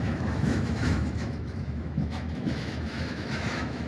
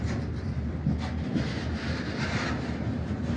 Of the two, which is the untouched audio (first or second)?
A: second